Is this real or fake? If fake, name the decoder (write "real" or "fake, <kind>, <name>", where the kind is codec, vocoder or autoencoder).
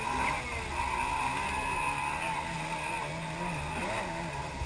real